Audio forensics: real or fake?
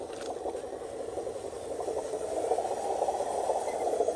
fake